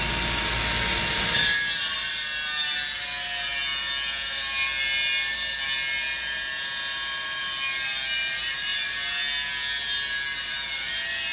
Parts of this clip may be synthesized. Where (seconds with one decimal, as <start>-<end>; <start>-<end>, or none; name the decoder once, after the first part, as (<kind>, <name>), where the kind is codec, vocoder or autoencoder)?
none